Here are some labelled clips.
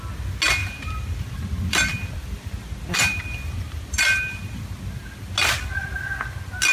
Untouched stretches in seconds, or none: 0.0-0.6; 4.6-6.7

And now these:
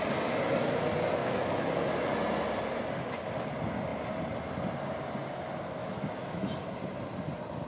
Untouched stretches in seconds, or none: 0.0-1.2; 1.7-5.8; 6.6-7.7

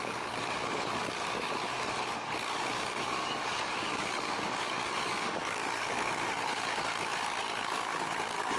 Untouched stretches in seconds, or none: none

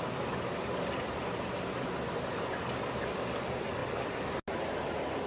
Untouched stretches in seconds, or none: 0.0-5.3